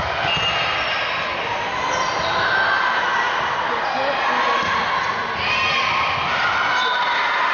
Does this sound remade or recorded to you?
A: recorded